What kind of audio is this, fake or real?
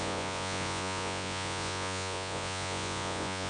fake